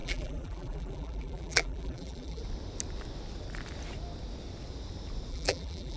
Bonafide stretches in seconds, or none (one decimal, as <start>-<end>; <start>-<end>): 2.4-5.3